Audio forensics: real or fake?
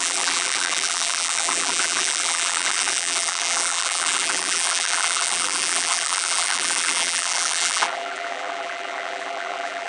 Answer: fake